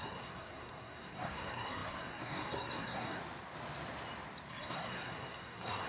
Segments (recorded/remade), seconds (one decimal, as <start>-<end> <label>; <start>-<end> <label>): 0.0-3.2 remade; 3.2-4.5 recorded; 4.5-5.9 remade